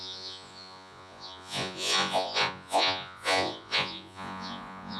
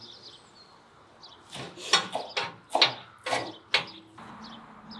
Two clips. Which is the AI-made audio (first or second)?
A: first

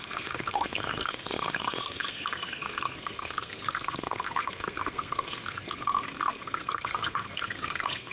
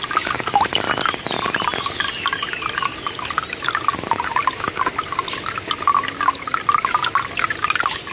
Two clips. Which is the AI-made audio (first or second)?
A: first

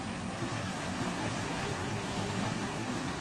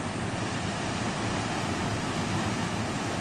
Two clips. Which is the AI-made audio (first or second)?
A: first